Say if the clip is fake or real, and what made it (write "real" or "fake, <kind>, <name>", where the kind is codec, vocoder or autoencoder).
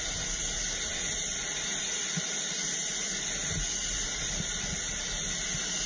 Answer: real